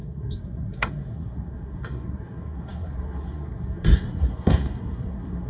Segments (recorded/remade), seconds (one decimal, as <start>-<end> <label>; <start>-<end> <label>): 0.0-5.5 remade